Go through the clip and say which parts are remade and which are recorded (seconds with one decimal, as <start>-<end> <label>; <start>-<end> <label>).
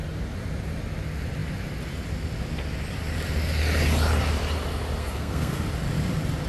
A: 0.0-5.0 recorded; 5.0-5.6 remade; 5.6-6.5 recorded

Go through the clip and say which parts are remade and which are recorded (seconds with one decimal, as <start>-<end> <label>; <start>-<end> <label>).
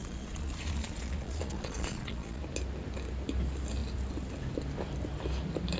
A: 0.0-2.4 remade; 2.4-5.8 recorded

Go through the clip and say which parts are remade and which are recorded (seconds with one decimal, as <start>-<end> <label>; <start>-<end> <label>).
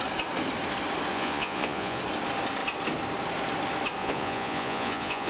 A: 0.0-1.1 recorded; 1.1-2.0 remade; 2.0-4.0 recorded; 4.0-5.3 remade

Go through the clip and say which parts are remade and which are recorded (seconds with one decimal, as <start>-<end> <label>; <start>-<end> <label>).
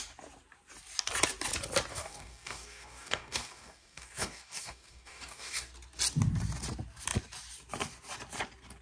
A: 0.0-1.9 recorded; 1.9-5.7 remade; 5.7-8.8 recorded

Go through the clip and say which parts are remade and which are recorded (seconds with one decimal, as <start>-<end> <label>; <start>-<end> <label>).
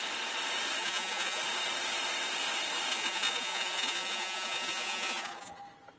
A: 0.0-0.8 recorded; 0.8-1.4 remade; 1.4-2.9 recorded; 2.9-5.6 remade; 5.6-6.0 recorded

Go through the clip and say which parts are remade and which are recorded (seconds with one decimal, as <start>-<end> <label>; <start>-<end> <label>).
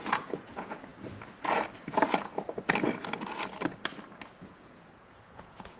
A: 0.0-0.9 remade; 0.9-4.4 recorded; 4.4-5.8 remade